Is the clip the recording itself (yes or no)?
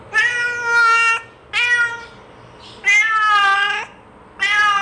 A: yes